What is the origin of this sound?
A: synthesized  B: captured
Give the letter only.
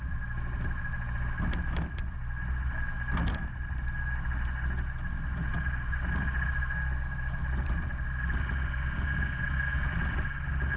B